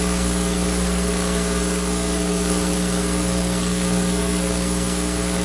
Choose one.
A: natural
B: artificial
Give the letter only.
B